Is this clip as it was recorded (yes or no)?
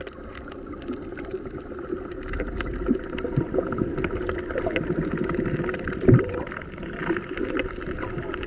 yes